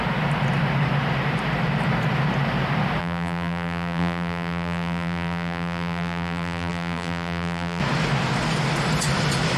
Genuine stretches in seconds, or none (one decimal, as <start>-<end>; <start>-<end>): 0.0-3.0; 7.8-9.6